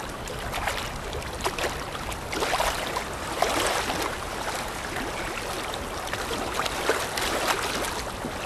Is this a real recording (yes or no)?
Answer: yes